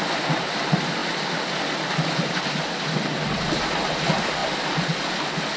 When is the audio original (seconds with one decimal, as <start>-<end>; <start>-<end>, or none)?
0.0-5.6